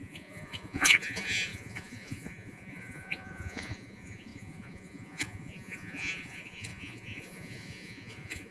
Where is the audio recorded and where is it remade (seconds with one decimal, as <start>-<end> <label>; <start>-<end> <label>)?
0.0-8.5 remade